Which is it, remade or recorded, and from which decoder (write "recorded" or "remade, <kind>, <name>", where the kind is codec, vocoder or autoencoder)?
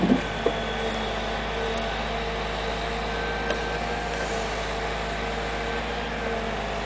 recorded